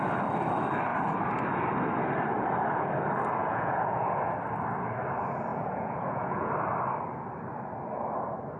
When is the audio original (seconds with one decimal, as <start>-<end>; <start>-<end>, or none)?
0.0-3.4; 4.3-5.5; 6.5-8.6